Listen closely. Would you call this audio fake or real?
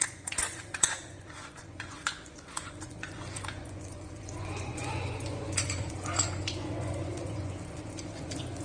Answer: fake